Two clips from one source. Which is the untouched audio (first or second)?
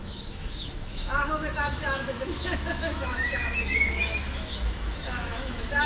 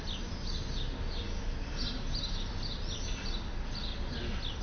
second